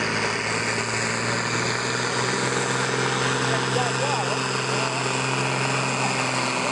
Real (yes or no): yes